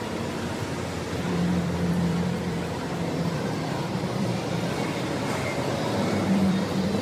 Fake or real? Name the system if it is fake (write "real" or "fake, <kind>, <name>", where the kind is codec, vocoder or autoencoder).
fake, vocoder, BigVGAN v2